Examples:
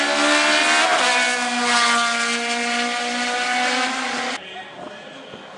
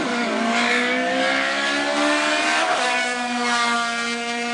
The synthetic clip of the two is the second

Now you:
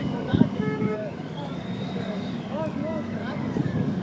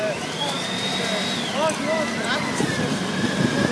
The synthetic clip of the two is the first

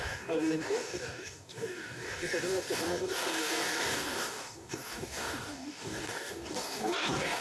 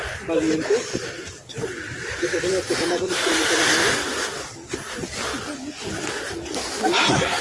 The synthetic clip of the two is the first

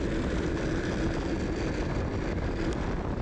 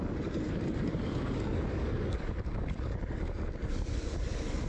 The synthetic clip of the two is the second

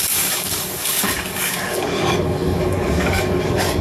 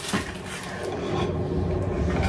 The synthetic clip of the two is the first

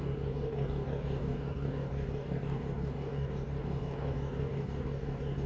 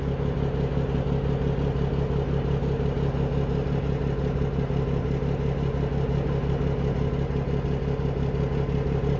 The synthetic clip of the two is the first